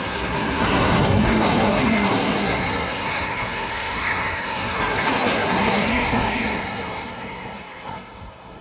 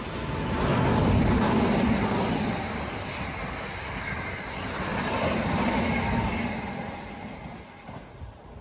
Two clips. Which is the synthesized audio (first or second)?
first